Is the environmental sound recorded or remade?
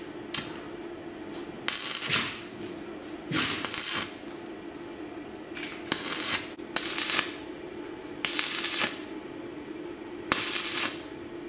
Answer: recorded